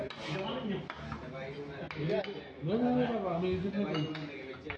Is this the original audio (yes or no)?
yes